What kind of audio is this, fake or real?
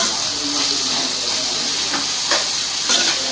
real